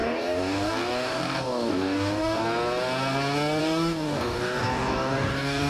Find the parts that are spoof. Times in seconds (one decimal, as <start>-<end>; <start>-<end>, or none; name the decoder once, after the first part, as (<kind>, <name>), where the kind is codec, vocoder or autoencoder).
0.0-2.4 (codec, DAC); 3.6-5.7